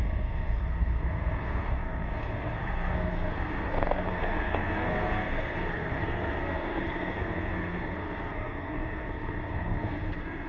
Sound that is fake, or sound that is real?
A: fake